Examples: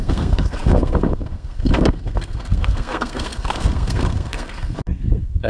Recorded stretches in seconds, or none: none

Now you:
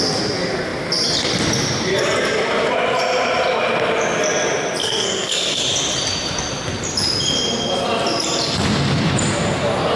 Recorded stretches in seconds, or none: 0.0-4.8; 5.6-10.0

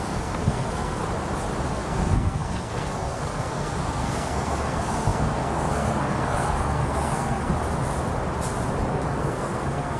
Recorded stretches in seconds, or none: 1.0-1.7; 7.5-8.9

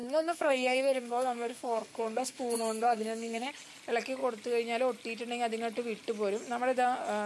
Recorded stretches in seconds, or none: 3.5-7.3

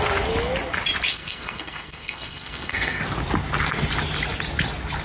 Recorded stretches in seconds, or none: 0.0-1.1; 3.0-5.0

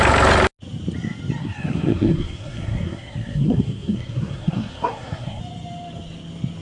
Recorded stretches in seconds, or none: 0.0-1.4; 5.4-6.6

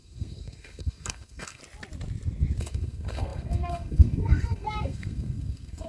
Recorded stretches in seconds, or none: 1.6-2.6